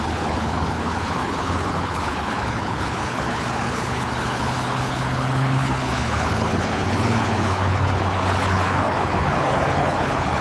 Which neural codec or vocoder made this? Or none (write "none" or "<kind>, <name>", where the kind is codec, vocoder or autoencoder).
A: codec, HILCodec